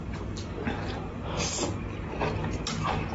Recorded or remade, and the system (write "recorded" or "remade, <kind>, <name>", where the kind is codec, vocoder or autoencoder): recorded